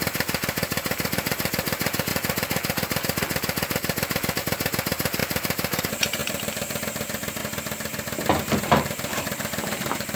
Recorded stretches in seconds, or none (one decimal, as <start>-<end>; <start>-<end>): 2.1-4.4; 7.4-8.5